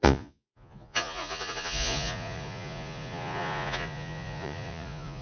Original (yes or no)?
no